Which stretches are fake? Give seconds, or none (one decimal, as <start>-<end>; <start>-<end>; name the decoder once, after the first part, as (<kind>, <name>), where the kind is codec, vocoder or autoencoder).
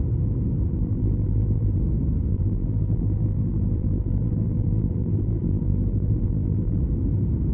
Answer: 0.7-1.8 (vocoder, BigVGAN v2); 2.3-6.8